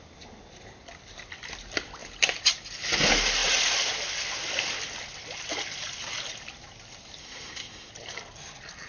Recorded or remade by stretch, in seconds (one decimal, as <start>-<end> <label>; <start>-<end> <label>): 0.0-7.2 recorded; 7.2-7.9 remade; 7.9-8.9 recorded